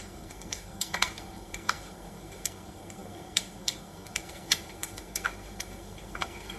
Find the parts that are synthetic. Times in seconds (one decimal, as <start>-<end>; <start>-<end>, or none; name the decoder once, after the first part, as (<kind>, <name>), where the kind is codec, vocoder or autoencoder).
0.0-6.6 (codec, SNAC)